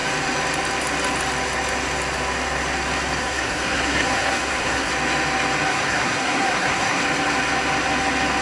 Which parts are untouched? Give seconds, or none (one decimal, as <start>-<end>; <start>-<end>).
0.0-3.2; 4.9-5.7; 7.0-8.4